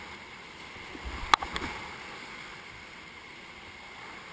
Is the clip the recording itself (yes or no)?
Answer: yes